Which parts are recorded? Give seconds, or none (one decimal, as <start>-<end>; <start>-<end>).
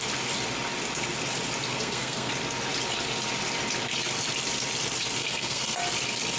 0.0-1.7; 2.3-5.2; 5.8-6.4